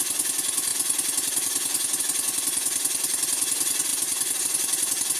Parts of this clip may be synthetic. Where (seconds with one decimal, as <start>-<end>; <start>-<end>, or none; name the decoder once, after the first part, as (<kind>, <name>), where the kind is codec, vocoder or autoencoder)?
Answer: none